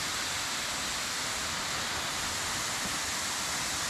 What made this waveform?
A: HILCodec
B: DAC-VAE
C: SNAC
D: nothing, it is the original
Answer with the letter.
D